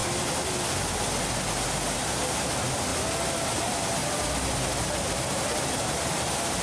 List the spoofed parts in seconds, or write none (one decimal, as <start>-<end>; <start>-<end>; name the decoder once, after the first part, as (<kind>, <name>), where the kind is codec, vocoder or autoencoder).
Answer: none